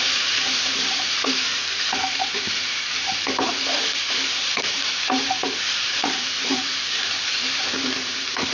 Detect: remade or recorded remade